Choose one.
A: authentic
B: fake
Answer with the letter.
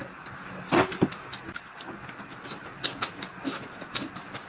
A